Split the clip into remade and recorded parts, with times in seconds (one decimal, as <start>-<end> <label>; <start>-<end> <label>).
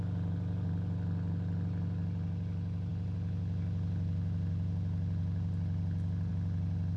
0.0-7.0 recorded